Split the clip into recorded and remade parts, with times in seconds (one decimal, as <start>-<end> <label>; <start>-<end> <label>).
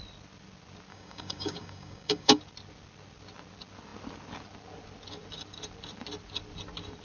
0.0-0.9 recorded; 0.9-2.4 remade; 2.4-7.0 recorded